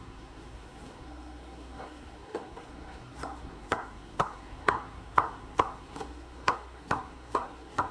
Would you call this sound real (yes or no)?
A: no